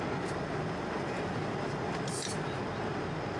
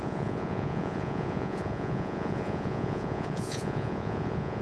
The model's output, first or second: second